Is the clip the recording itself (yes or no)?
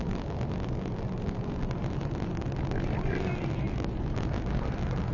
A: yes